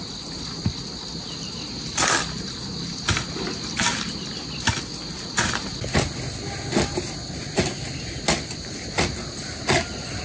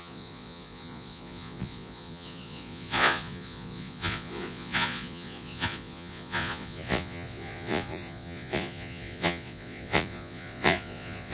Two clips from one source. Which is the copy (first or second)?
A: second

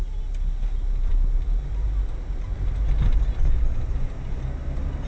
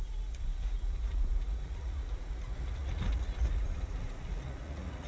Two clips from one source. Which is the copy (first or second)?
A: second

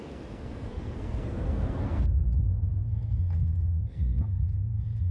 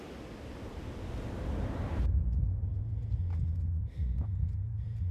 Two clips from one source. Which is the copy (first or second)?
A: first